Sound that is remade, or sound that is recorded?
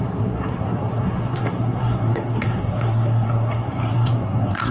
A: remade